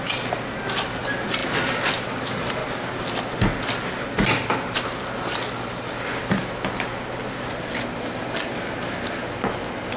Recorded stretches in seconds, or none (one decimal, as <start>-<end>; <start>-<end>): 0.0-10.0